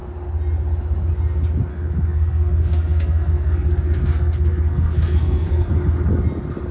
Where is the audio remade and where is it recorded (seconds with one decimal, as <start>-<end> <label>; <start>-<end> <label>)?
0.0-1.7 recorded; 1.7-5.7 remade; 5.7-6.7 recorded